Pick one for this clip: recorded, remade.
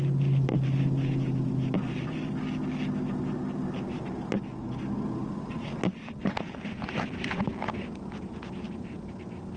recorded